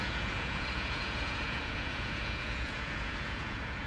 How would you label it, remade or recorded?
remade